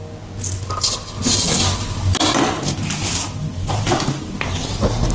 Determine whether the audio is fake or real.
real